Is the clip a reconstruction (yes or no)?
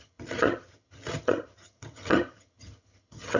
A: yes